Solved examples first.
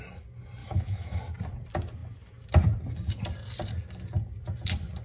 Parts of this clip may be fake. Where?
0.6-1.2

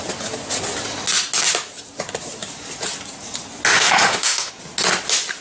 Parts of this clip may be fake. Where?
3.7-4.5

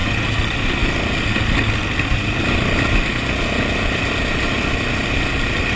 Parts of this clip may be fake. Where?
none

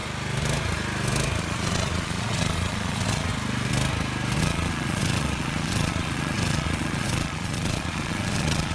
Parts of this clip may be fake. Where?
1.4-3.3; 4.4-8.7

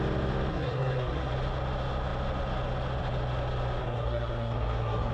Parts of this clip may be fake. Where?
0.5-1.3; 3.8-5.1

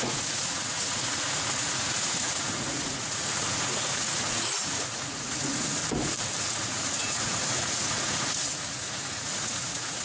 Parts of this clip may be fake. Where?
0.0-5.8; 6.4-10.0